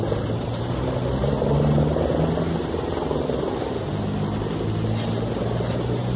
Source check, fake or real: real